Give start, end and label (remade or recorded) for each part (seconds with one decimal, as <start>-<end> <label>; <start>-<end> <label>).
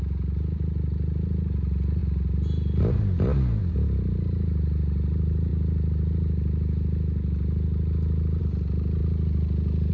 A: 0.0-9.0 recorded; 9.0-9.9 remade